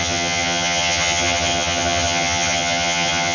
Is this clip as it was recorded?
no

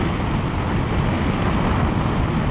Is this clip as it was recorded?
yes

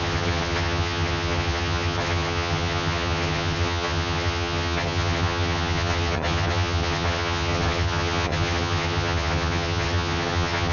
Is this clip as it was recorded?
no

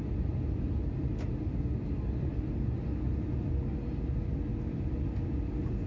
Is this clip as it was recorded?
yes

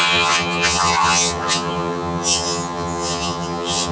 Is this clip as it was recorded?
no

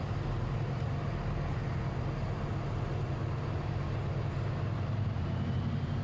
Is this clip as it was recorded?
yes